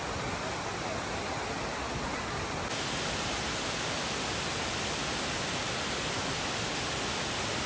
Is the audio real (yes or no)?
yes